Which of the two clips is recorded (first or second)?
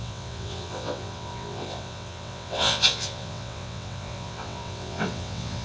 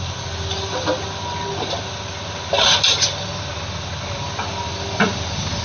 second